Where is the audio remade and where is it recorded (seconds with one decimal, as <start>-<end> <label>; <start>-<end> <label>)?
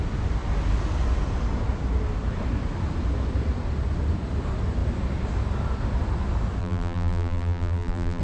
0.0-6.6 recorded; 6.6-8.2 remade